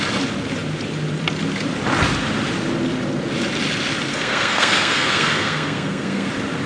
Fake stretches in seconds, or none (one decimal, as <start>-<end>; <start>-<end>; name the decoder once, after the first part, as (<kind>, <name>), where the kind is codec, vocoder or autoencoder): 4.1-6.3 (codec, SNAC)